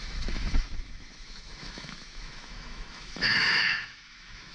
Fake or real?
fake